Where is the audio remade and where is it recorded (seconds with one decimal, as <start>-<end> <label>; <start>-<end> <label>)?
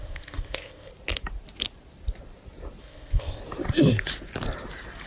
0.0-0.9 remade; 0.9-2.8 recorded; 2.8-3.4 remade; 3.4-5.1 recorded